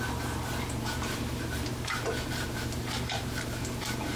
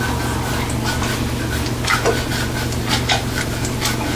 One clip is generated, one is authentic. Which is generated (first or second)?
first